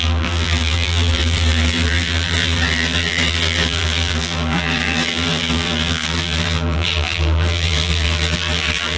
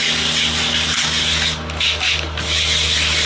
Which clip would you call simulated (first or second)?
first